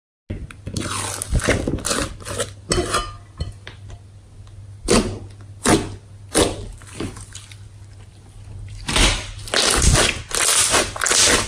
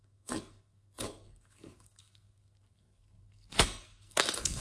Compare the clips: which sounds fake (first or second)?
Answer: second